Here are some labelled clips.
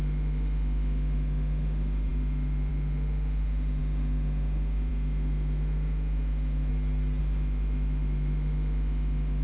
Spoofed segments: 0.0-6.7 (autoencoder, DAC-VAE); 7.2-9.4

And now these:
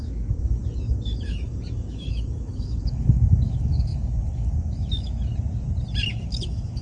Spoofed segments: 0.0-5.3 (autoencoder, DAC-VAE); 6.1-6.8

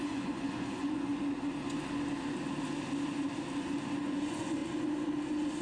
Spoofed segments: 0.0-1.1 (vocoder, Vocos); 4.0-4.6